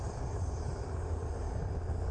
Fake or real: real